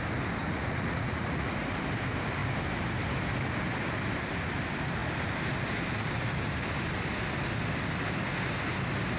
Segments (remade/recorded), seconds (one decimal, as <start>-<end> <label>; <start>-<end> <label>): 0.0-0.4 recorded; 0.4-1.6 remade; 1.6-9.2 recorded